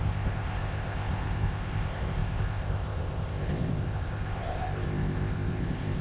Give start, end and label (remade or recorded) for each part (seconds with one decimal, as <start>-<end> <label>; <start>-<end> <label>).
0.0-6.0 remade